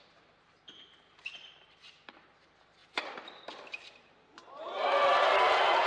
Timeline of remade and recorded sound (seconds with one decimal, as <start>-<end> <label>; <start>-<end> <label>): 0.0-5.9 remade

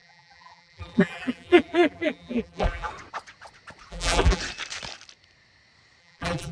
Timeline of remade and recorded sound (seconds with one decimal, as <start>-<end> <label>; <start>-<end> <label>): 0.0-2.9 remade; 2.9-3.9 recorded; 3.9-4.4 remade; 4.4-6.0 recorded; 6.0-6.5 remade

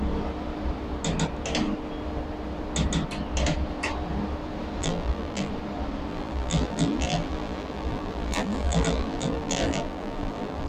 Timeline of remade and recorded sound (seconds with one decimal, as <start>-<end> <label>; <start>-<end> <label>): 0.0-4.8 recorded; 4.8-5.5 remade; 5.5-6.1 recorded; 6.1-10.7 remade